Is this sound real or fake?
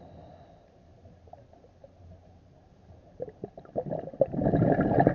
real